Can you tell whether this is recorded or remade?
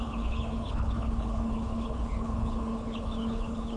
remade